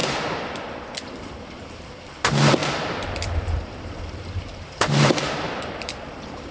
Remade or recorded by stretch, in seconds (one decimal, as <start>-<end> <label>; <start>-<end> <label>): 0.0-1.0 recorded; 1.0-6.5 remade